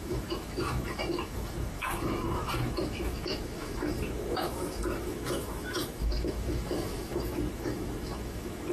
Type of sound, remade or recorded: remade